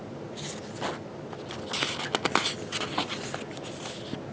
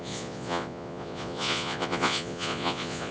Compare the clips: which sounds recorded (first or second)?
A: first